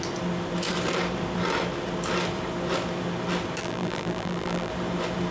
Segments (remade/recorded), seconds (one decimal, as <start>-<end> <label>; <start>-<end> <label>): 0.0-3.6 recorded; 3.6-4.7 remade; 4.7-5.3 recorded